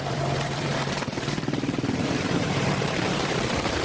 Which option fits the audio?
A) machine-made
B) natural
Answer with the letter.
A